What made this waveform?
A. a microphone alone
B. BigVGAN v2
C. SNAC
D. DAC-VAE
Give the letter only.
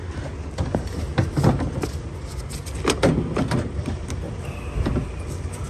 A